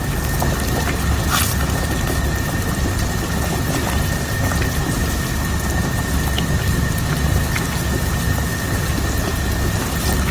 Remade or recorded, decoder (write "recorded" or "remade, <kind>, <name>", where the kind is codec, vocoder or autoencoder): recorded